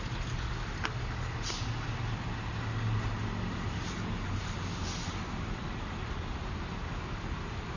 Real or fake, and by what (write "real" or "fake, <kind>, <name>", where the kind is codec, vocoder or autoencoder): real